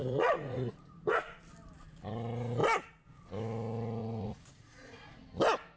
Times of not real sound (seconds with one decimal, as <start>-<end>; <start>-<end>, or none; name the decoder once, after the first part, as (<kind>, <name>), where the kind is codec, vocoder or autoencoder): 0.0-1.4 (vocoder, Vocos); 4.0-5.1